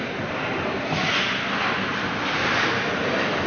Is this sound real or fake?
real